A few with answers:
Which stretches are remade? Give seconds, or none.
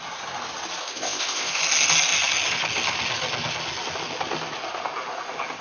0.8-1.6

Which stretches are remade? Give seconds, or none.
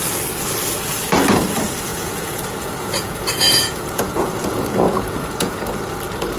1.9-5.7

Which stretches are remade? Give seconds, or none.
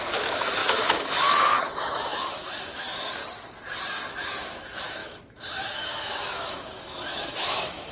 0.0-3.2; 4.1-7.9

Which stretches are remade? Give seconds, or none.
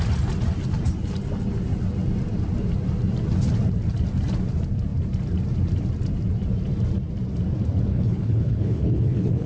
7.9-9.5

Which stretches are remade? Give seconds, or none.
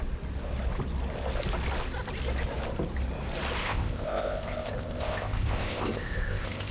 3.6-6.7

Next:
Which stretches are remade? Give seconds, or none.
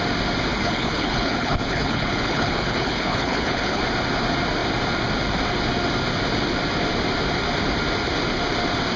0.5-3.8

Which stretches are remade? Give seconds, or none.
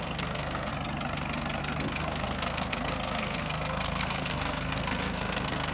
0.0-0.7; 1.6-5.7